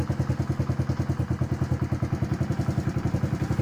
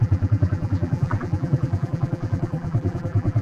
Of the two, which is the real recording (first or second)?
first